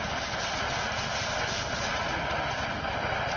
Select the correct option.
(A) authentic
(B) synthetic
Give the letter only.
A